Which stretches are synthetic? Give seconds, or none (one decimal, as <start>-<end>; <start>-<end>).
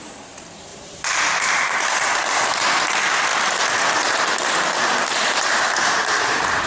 0.7-2.9; 3.3-6.7